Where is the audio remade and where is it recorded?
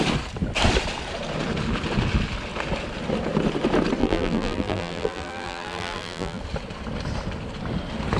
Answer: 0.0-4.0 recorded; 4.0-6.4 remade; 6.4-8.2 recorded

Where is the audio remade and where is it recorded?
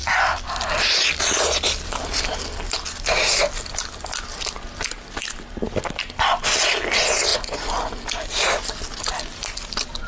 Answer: 0.0-10.1 recorded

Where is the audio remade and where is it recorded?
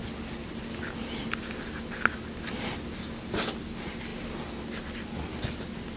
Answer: 0.0-6.0 recorded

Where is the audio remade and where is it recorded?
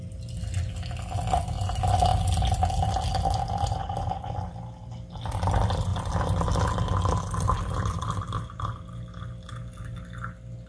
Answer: 0.0-5.9 recorded; 5.9-8.1 remade; 8.1-10.7 recorded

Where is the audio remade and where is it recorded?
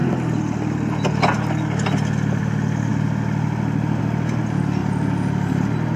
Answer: 0.0-6.0 recorded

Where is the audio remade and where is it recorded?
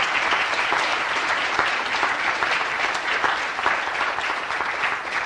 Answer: 0.0-0.9 recorded; 0.9-3.8 remade; 3.8-5.3 recorded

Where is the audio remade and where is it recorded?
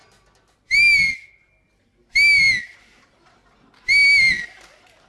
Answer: 0.0-5.1 recorded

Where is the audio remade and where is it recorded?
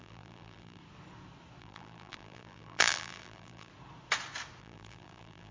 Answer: 0.0-0.8 remade; 0.8-1.6 recorded; 1.6-3.7 remade; 3.7-4.6 recorded; 4.6-5.5 remade